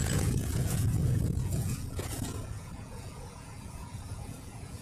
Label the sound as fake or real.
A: fake